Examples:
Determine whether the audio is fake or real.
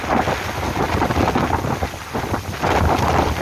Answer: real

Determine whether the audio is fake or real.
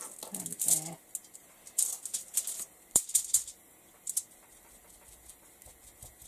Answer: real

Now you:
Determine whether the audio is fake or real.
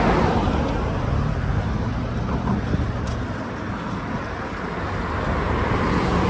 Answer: real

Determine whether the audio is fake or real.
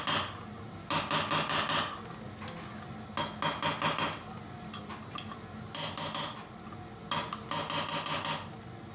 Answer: real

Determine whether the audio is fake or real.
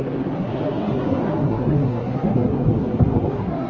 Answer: fake